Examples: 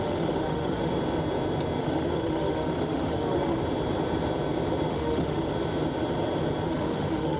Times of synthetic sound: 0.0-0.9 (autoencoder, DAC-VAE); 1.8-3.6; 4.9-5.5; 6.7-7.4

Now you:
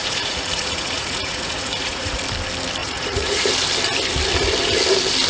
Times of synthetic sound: 0.0-2.2 (vocoder, Vocos); 2.8-3.5

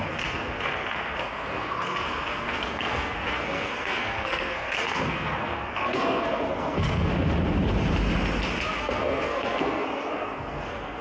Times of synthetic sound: 0.0-7.1 (codec, SNAC); 8.8-11.0

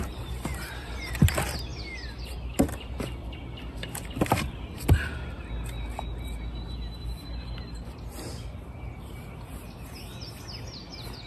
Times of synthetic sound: none

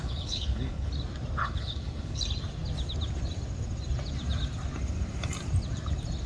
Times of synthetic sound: 0.0-0.9 (codec, HILCodec); 1.4-2.2

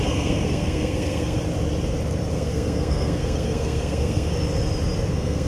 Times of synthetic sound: 0.0-1.4 (codec, SNAC); 2.3-4.3; 5.1-5.5

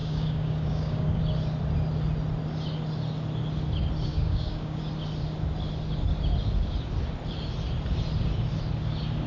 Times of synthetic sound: 0.0-1.2 (codec, DAC); 4.1-4.8